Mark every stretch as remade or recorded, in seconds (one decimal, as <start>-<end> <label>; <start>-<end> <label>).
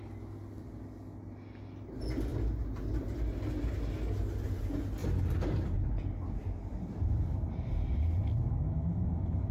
0.0-5.0 recorded; 5.0-7.7 remade; 7.7-9.5 recorded